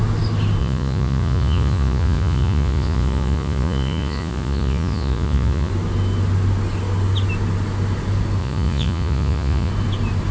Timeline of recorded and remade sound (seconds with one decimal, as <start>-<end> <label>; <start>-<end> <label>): 0.0-0.6 recorded; 0.6-5.7 remade; 5.7-8.4 recorded; 8.4-9.7 remade; 9.7-10.3 recorded